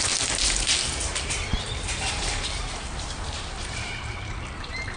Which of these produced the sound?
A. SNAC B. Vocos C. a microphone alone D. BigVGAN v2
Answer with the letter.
D